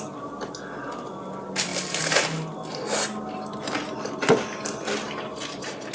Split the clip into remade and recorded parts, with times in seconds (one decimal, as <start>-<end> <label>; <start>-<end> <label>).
0.0-5.9 recorded